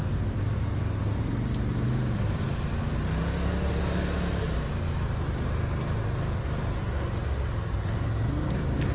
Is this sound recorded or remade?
recorded